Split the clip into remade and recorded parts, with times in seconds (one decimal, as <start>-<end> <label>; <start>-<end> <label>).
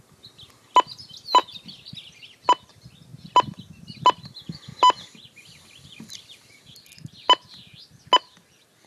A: 0.0-1.4 recorded; 1.4-2.7 remade; 2.7-3.1 recorded; 3.1-3.8 remade; 3.8-8.9 recorded